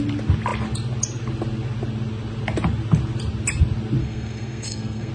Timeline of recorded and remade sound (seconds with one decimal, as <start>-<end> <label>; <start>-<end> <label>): 0.0-4.0 recorded; 4.0-5.1 remade